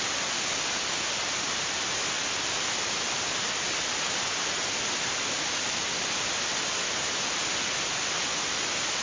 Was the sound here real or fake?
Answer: real